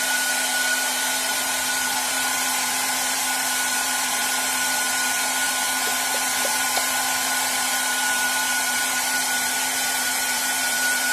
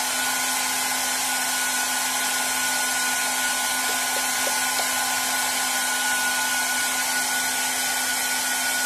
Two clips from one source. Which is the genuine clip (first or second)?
second